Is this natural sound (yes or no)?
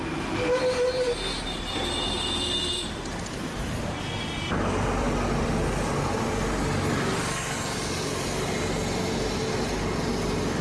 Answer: yes